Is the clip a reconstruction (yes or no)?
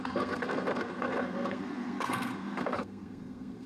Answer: yes